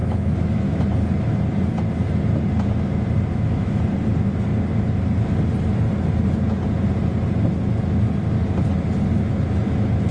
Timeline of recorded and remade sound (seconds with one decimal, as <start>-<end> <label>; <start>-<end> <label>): 0.0-0.8 remade; 0.8-3.3 recorded; 3.3-3.8 remade; 3.8-10.1 recorded